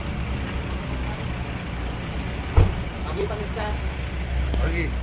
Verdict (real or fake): real